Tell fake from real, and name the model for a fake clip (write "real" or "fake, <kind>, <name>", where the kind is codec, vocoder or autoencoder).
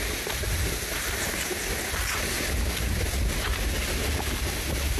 real